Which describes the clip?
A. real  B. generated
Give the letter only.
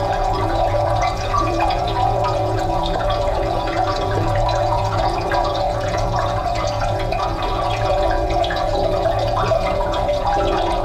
B